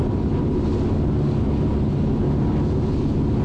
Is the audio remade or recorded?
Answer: recorded